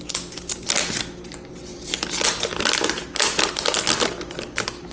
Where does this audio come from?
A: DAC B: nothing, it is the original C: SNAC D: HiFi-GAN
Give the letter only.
B